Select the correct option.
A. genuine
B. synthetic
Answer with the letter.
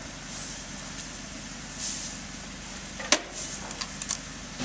A